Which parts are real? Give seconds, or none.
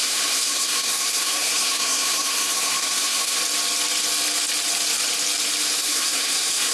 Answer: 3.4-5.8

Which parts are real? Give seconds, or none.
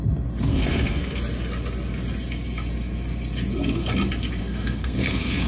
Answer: 0.0-0.5; 1.2-4.4